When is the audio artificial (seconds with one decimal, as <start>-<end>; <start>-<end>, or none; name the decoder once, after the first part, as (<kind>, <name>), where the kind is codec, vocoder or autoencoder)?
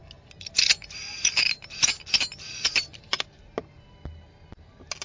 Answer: none